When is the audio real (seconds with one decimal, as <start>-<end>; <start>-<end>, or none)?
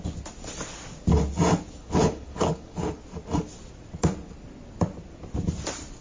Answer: 0.0-1.8; 3.0-6.0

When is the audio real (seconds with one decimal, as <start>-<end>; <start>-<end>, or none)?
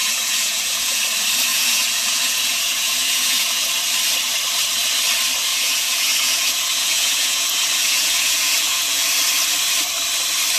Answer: 1.0-1.5; 3.7-5.5; 9.1-10.6